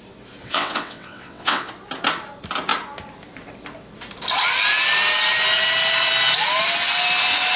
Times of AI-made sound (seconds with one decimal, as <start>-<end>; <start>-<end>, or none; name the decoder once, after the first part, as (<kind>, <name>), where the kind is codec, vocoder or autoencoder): 0.4-1.7 (vocoder, WaveNeXt)